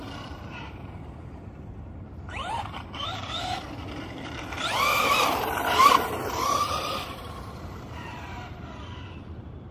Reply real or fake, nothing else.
fake